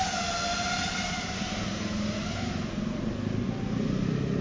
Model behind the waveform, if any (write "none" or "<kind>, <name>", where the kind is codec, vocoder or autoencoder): none